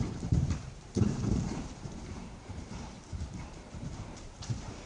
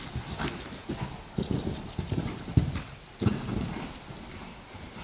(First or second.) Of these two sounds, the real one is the second